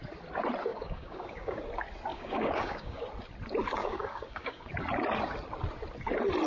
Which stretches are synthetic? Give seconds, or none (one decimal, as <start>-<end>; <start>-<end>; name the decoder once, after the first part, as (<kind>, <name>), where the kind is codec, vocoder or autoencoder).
0.7-1.6 (codec, DAC); 2.1-3.0; 3.8-4.7